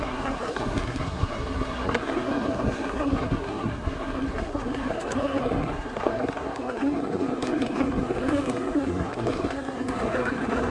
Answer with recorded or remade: remade